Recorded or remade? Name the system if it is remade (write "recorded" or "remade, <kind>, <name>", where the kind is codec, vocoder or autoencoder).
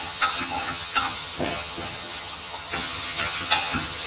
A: remade, vocoder, HiFi-GAN